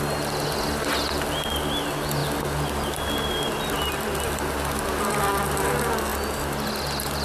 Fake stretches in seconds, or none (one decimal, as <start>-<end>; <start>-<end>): none